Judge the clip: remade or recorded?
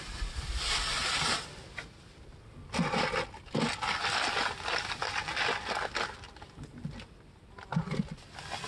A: recorded